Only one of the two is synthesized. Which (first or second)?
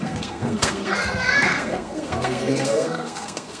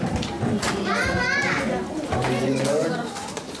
first